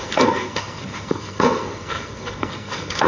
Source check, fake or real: fake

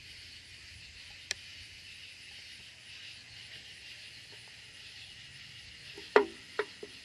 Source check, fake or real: real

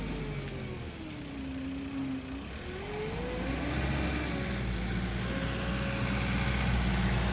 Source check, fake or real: real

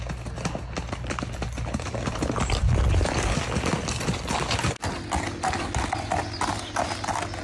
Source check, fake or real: real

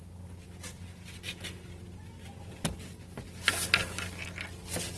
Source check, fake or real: real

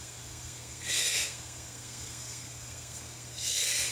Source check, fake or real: fake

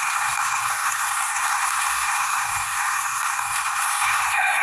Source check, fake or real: fake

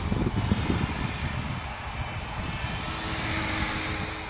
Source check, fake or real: real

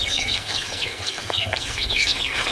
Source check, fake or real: fake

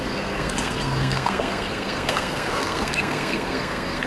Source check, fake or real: fake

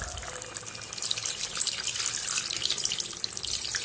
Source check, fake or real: real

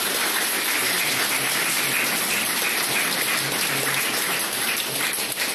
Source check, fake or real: real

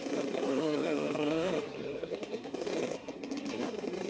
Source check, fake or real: fake